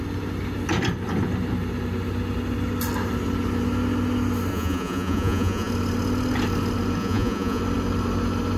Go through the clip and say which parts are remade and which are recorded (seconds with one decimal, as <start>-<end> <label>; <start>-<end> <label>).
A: 0.0-4.5 recorded; 4.5-5.7 remade; 5.7-7.0 recorded; 7.0-7.6 remade; 7.6-8.6 recorded